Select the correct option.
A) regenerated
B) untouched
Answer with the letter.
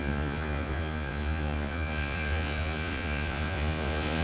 A